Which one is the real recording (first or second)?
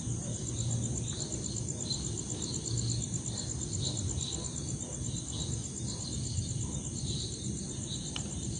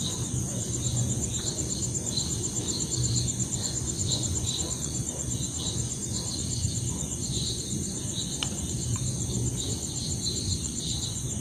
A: first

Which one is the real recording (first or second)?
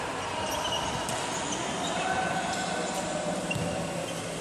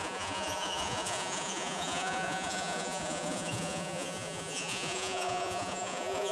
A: first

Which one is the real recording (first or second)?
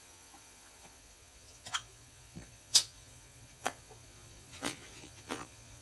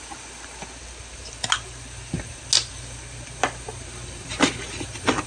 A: second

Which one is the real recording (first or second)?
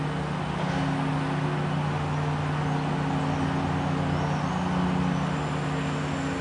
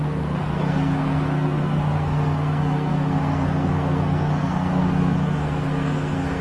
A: first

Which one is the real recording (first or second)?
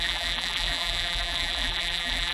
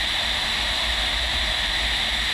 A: second